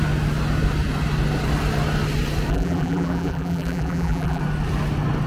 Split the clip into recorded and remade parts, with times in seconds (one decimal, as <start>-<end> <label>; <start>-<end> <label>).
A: 0.0-2.5 recorded; 2.5-4.4 remade; 4.4-5.3 recorded

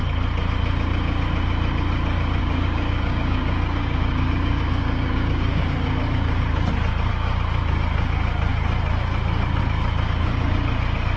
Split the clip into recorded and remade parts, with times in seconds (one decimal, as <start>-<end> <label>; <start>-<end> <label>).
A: 0.0-2.4 recorded; 2.4-6.7 remade; 6.7-11.2 recorded